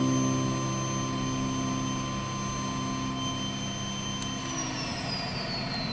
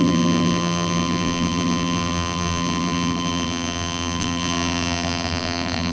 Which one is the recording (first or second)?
first